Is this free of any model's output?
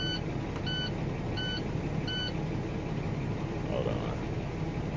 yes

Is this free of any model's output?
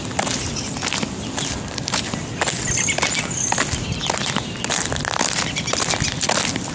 yes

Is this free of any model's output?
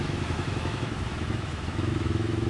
no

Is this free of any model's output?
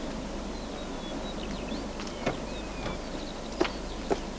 yes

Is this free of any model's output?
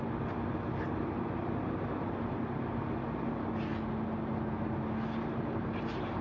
yes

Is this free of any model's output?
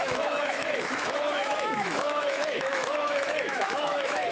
no